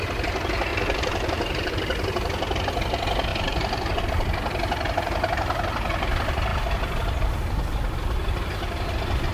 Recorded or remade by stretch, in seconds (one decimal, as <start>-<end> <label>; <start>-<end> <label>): 0.0-0.7 recorded; 0.7-1.7 remade; 1.7-3.3 recorded; 3.3-4.0 remade; 4.0-9.3 recorded